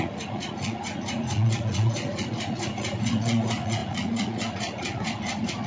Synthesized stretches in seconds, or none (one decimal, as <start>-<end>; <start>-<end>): 0.0-5.7